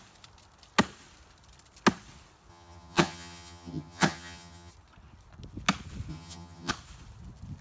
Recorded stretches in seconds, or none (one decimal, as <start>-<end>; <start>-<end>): 0.0-2.5; 4.7-6.1; 6.7-7.6